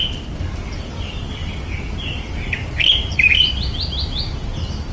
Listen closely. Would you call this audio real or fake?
real